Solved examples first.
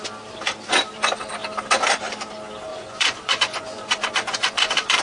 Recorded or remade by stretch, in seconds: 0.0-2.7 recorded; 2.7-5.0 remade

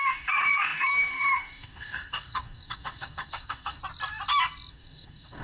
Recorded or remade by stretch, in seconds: 0.0-3.8 remade; 3.8-4.7 recorded; 4.7-5.4 remade

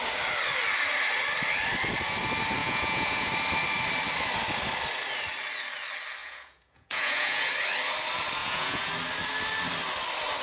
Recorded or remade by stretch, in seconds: 0.0-2.6 recorded; 2.6-3.3 remade; 3.3-6.2 recorded; 6.2-7.5 remade; 7.5-8.4 recorded; 8.4-8.9 remade; 8.9-10.4 recorded

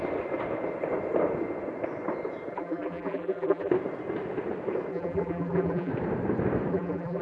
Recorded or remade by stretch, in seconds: 0.0-2.5 recorded; 2.5-3.7 remade; 3.7-4.9 recorded; 4.9-5.9 remade; 5.9-6.7 recorded; 6.7-7.2 remade

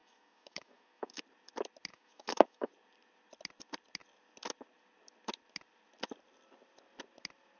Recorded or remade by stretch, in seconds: 0.0-1.2 remade; 1.2-1.9 recorded; 1.9-2.7 remade; 2.7-7.6 recorded

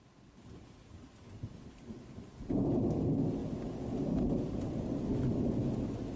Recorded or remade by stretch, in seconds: 0.0-6.2 recorded

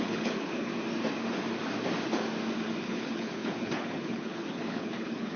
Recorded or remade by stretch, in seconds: 0.0-0.7 remade; 0.7-2.8 recorded; 2.8-5.4 remade

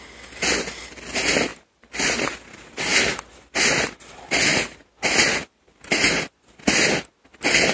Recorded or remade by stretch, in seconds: 0.0-1.5 recorded; 1.5-2.5 remade; 2.5-4.5 recorded; 4.5-6.1 remade; 6.1-7.7 recorded